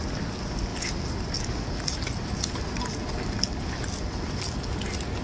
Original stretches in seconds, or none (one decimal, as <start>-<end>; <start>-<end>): 0.0-5.2

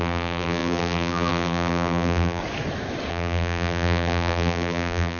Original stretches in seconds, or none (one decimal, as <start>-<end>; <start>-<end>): 2.4-3.1

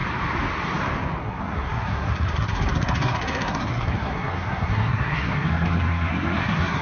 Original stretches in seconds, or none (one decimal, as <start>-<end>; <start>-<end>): 0.0-1.2

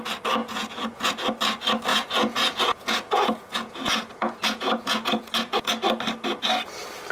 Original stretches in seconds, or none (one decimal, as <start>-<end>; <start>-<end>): 0.0-0.4; 1.1-1.9; 5.7-7.1

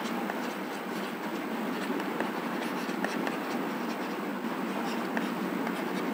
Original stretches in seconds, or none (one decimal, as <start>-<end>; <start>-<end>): 0.0-1.9; 3.4-6.1

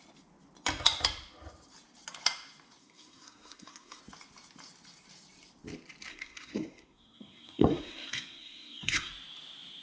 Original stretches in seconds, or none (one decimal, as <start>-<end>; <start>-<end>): 0.0-2.8; 4.0-6.1; 9.1-9.8

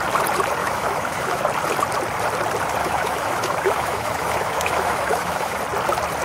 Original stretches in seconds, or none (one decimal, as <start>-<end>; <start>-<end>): 0.0-0.6; 1.4-2.8; 5.6-6.2

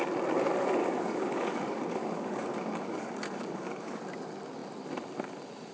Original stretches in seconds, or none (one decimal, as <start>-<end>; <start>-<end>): 0.0-0.8; 4.0-5.7